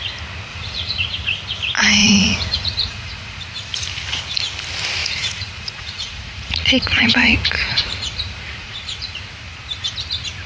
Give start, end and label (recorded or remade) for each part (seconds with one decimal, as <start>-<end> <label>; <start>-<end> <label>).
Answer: 0.0-0.5 recorded; 0.5-1.1 remade; 1.1-2.0 recorded; 2.0-3.4 remade; 3.4-5.0 recorded; 5.0-9.3 remade; 9.3-10.5 recorded